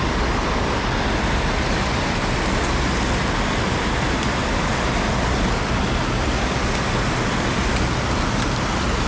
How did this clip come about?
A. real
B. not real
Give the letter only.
A